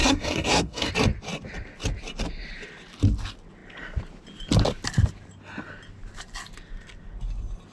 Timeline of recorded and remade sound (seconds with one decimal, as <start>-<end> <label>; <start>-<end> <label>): 0.0-0.9 remade; 0.9-7.7 recorded